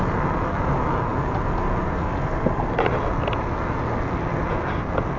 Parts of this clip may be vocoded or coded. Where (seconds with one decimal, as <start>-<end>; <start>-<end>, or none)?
none